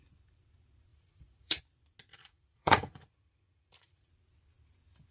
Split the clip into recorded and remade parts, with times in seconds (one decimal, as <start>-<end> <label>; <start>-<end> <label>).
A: 0.0-0.9 recorded; 0.9-1.6 remade; 1.6-2.1 recorded; 2.1-4.1 remade; 4.1-5.1 recorded